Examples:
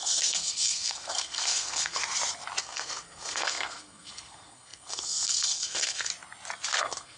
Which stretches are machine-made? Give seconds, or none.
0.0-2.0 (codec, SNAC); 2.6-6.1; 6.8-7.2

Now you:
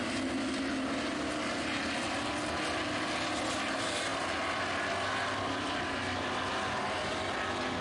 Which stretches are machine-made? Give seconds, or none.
none